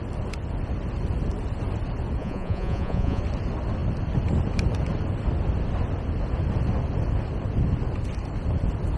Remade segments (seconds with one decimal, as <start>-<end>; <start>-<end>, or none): 2.2-3.2

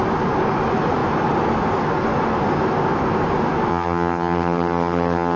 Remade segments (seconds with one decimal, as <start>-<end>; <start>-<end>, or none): 3.7-5.4